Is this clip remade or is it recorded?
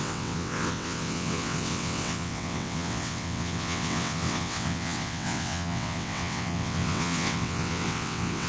remade